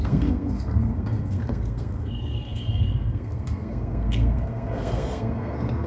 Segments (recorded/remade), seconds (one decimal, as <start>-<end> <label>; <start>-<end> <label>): 0.0-5.9 remade